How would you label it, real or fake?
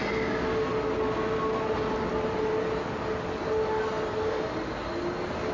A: real